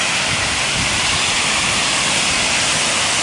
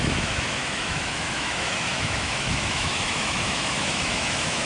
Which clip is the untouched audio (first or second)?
first